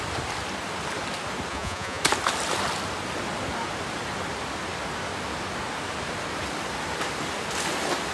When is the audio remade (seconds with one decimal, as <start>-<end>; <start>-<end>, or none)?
1.5-2.0